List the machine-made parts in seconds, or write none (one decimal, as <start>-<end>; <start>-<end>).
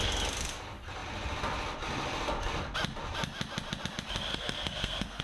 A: 4.3-5.2